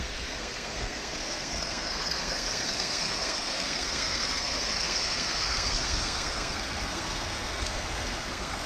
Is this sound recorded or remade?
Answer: remade